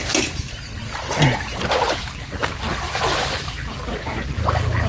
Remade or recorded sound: recorded